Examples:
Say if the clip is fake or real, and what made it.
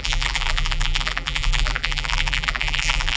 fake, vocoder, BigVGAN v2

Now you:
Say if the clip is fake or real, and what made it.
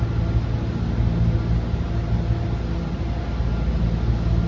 real